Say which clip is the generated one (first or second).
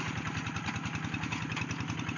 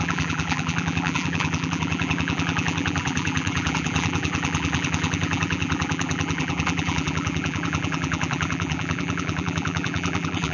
second